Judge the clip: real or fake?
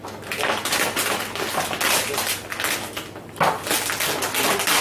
real